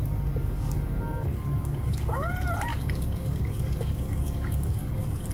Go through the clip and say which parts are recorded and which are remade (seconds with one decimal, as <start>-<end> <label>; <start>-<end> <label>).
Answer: 0.0-0.4 recorded; 0.4-2.3 remade; 2.3-2.7 recorded; 2.7-5.3 remade